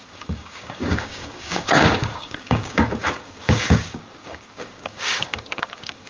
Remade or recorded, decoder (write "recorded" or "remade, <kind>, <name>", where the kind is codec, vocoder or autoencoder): remade, codec, DAC